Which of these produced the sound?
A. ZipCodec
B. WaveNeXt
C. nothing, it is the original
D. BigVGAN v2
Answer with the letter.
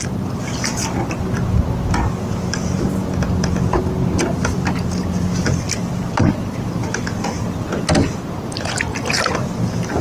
C